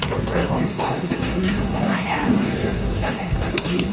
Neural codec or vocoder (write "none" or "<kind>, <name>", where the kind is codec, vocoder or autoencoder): codec, SNAC